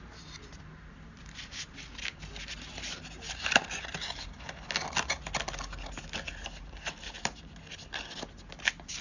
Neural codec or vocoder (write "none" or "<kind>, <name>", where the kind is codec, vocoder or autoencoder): none